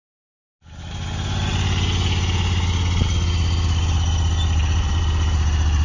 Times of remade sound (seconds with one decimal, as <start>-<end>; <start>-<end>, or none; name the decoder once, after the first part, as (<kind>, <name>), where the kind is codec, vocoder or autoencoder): none